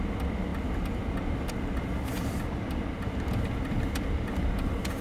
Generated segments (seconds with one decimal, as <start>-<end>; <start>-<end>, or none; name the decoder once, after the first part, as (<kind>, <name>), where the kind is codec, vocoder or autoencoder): none

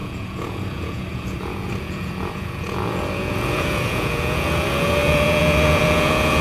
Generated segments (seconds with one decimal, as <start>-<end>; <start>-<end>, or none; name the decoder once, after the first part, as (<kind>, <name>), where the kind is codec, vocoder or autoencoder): 0.0-6.4 (vocoder, Vocos)

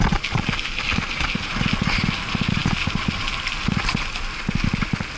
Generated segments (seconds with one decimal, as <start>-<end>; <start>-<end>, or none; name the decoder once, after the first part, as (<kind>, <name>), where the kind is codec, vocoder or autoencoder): none